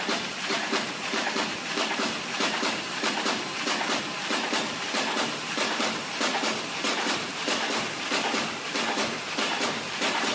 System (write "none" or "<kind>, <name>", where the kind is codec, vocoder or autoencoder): vocoder, BigVGAN v2